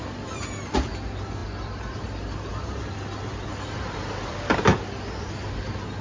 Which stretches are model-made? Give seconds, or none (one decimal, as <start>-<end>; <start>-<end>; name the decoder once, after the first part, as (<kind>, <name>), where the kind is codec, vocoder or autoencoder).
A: none

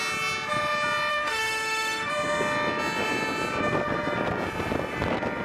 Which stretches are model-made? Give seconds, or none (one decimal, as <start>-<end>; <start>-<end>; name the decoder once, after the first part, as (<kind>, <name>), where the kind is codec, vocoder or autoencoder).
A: 1.1-2.1 (autoencoder, DAC-VAE)

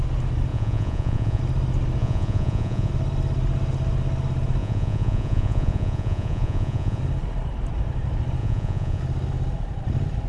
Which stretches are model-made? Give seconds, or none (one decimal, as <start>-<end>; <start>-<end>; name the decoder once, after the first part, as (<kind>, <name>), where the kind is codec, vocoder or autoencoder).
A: 0.5-1.4 (vocoder, Vocos); 2.0-2.9; 4.6-7.0; 8.4-9.0

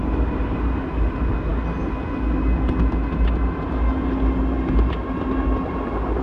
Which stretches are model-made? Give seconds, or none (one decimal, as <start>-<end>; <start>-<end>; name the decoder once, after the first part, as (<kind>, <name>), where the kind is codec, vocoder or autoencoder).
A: 0.0-0.8 (vocoder, BigVGAN v2)